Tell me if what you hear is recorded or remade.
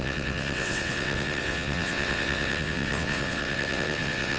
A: remade